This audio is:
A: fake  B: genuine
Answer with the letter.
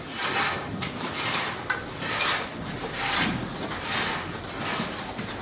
B